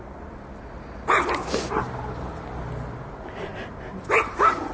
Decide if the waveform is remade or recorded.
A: recorded